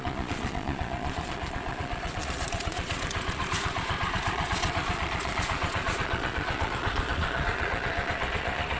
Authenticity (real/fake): fake